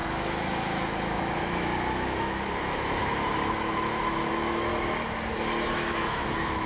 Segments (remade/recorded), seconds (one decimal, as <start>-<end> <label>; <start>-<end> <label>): 0.0-4.7 remade; 4.7-5.7 recorded; 5.7-6.7 remade